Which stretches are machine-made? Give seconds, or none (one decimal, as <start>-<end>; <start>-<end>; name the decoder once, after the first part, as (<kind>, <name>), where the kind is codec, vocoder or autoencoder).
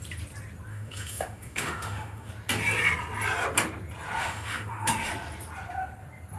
0.7-2.3 (autoencoder, DAC-VAE); 4.2-5.1